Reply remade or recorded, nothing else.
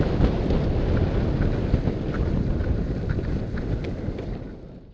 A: recorded